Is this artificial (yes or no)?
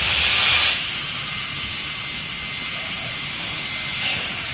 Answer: no